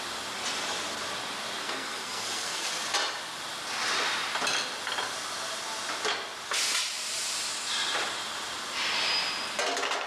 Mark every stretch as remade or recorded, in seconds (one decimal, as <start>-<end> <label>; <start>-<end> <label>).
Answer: 0.0-1.6 recorded; 1.6-2.7 remade; 2.7-10.1 recorded